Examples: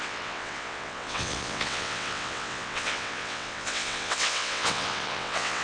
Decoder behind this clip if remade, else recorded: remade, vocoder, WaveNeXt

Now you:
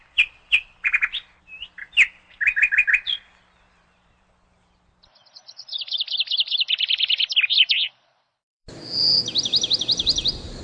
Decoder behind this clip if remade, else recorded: remade, vocoder, BigVGAN v2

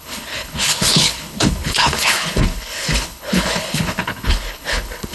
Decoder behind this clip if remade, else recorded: remade, codec, HILCodec